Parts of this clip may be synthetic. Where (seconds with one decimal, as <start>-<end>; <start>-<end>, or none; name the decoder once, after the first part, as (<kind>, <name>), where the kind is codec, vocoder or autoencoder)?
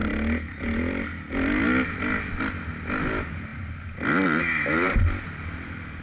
none